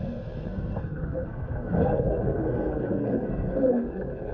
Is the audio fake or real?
fake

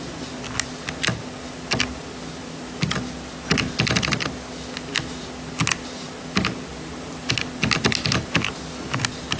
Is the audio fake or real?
real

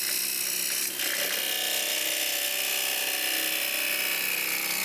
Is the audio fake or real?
real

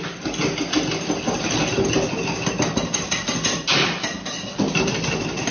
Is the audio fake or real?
real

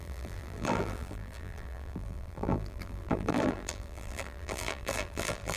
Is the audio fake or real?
fake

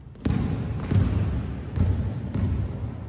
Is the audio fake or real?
real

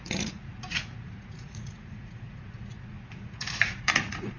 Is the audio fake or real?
fake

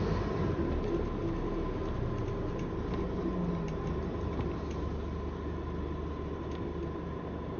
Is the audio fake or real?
real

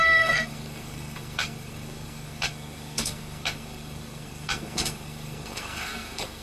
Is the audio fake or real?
fake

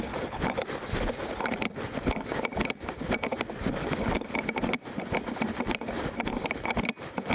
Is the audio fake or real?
real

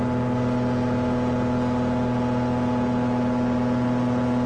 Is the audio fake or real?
real